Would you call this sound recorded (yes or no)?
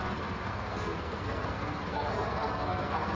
no